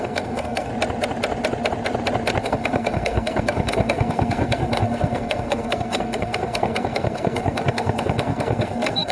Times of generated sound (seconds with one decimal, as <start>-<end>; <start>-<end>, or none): 0.0-0.7; 2.4-9.1